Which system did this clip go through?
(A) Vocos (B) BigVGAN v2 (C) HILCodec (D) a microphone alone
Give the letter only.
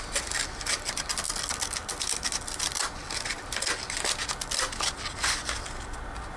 D